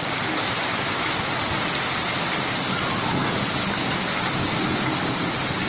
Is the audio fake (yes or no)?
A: no